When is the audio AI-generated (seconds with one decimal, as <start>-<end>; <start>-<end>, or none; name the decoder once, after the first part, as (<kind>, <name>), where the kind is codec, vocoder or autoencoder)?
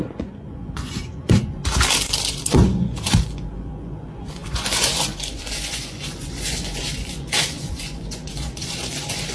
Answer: 0.0-1.6 (vocoder, Vocos); 2.3-9.3